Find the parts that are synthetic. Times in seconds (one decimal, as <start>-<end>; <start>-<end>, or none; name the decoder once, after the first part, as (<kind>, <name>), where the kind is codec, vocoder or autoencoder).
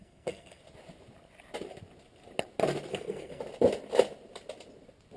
0.0-0.6 (codec, SNAC); 2.9-3.4